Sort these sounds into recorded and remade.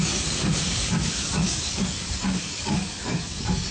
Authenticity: remade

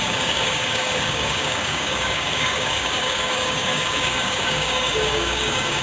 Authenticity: remade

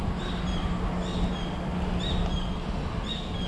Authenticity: recorded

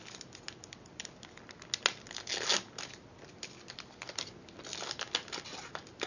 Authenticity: recorded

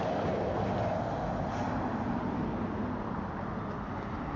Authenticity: recorded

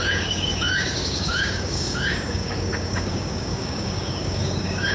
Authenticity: remade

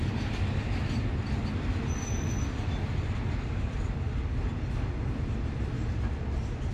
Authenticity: recorded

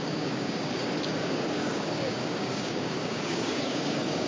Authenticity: remade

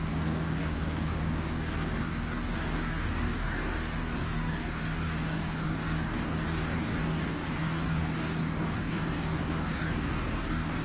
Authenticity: remade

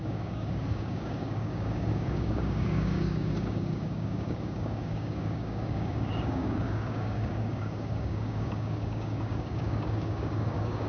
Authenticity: remade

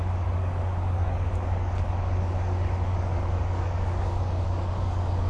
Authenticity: remade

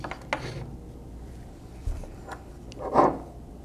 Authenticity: recorded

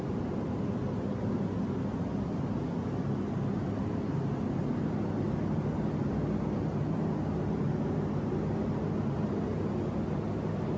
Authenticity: recorded